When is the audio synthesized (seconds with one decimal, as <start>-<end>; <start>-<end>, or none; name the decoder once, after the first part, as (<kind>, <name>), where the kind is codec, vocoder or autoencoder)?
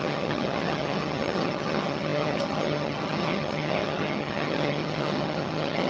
0.0-5.9 (vocoder, HiFi-GAN)